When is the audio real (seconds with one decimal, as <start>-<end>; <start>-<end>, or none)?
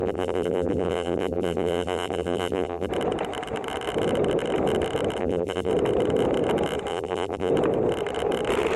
2.9-5.2; 5.7-6.9; 7.5-8.8